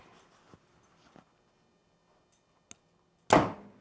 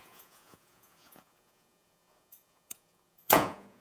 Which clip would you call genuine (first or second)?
first